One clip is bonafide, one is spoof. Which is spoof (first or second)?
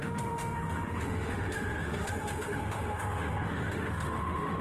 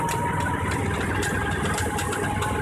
first